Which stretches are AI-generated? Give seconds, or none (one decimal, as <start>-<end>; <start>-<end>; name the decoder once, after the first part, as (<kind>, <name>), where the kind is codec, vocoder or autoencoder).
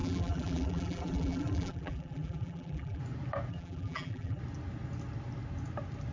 0.0-3.0 (vocoder, BigVGAN v2); 3.5-4.4